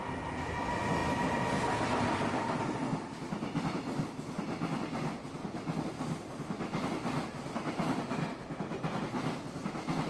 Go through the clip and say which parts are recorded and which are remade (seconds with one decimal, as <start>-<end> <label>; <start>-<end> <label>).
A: 0.0-10.1 recorded

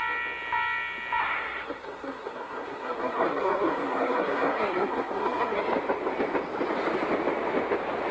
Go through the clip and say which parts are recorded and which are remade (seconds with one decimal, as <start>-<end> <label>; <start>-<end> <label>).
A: 0.0-1.2 recorded; 1.2-5.6 remade; 5.6-8.1 recorded

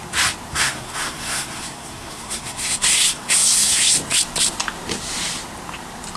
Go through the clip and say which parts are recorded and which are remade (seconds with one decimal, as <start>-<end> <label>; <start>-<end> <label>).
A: 0.0-0.5 recorded; 0.5-3.9 remade; 3.9-6.2 recorded

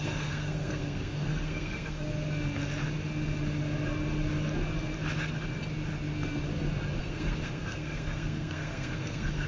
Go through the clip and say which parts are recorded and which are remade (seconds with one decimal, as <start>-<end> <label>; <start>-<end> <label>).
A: 0.0-2.1 remade; 2.1-7.0 recorded; 7.0-9.5 remade

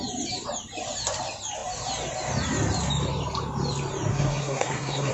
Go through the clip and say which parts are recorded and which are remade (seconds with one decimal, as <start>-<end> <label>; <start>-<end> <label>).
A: 0.0-4.1 recorded; 4.1-5.1 remade

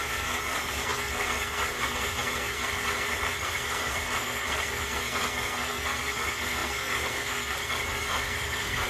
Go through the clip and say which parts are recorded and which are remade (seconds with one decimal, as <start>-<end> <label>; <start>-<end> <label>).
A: 0.0-8.9 remade

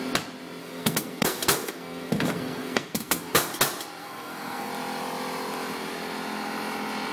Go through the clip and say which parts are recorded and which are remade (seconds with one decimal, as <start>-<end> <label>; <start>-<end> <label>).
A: 0.0-0.6 recorded; 0.6-3.5 remade; 3.5-4.0 recorded; 4.0-4.7 remade; 4.7-7.1 recorded

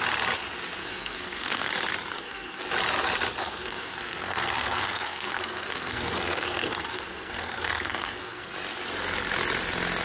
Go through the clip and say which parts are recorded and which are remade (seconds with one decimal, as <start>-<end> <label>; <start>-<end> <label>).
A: 0.0-0.8 recorded; 0.8-1.7 remade; 1.7-2.1 recorded; 2.1-2.6 remade; 2.6-3.4 recorded; 3.4-8.5 remade; 8.5-10.0 recorded